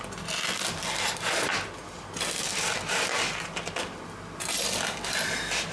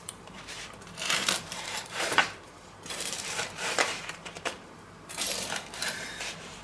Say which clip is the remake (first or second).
second